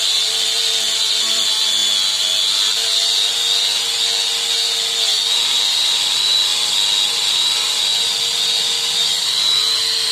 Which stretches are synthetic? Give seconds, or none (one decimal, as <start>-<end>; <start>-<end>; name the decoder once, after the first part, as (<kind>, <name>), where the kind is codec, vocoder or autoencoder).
0.0-1.8 (vocoder, BigVGAN v2); 5.3-6.5; 7.3-7.9; 8.6-10.1

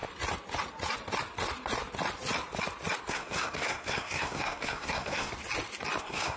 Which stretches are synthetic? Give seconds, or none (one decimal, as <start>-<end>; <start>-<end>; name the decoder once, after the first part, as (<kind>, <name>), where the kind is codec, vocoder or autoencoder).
3.1-5.3 (codec, SNAC); 6.0-6.4

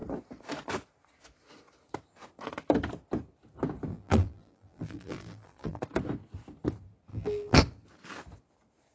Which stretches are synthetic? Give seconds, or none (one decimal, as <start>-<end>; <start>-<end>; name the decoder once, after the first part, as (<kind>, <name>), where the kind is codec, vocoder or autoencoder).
3.9-5.8 (vocoder, BigVGAN v2); 7.1-7.6

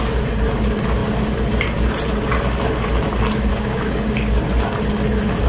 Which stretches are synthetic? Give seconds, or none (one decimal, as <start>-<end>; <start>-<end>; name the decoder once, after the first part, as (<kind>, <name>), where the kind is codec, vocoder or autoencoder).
3.5-4.4 (codec, DAC)

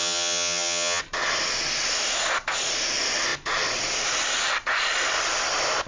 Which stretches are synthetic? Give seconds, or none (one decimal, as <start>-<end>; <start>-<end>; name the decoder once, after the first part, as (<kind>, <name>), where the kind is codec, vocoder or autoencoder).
0.0-1.0 (vocoder, HiFi-GAN)

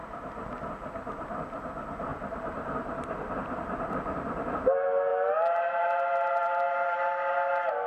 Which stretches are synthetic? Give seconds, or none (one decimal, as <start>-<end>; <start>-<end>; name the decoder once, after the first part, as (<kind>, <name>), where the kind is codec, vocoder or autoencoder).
0.0-0.7 (vocoder, BigVGAN v2); 2.1-3.5

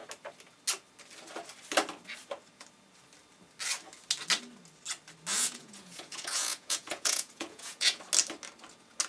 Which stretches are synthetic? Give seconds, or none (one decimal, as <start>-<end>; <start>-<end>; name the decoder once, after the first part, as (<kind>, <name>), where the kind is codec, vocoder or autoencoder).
5.3-8.0 (vocoder, Vocos)

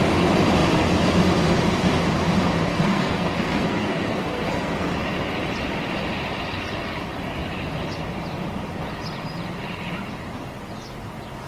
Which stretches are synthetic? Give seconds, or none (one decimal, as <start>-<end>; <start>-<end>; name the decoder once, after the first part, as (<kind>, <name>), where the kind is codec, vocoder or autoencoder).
2.7-4.9 (codec, SNAC)